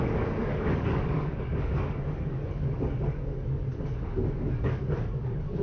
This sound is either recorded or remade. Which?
remade